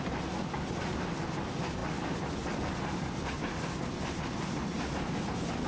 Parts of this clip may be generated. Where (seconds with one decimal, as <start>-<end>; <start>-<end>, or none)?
none